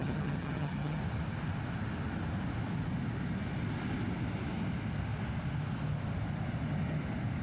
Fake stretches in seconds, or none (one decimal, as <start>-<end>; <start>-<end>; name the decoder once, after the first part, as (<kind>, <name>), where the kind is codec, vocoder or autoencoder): 0.0-1.0 (vocoder, HiFi-GAN)